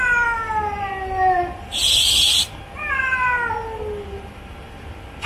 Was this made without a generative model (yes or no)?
yes